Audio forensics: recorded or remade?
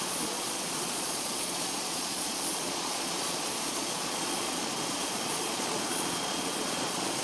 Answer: remade